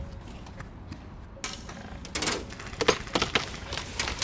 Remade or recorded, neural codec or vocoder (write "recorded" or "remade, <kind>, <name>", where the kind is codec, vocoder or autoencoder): recorded